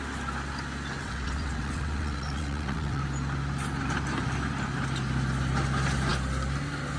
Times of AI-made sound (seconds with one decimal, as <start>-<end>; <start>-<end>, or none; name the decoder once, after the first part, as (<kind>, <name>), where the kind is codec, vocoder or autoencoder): 1.0-3.0 (vocoder, WaveNeXt)